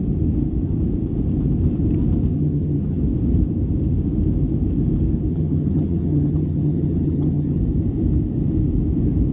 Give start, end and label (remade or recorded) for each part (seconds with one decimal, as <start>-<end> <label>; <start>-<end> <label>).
0.0-2.3 recorded; 2.3-3.0 remade; 3.0-5.3 recorded; 5.3-7.6 remade; 7.6-9.3 recorded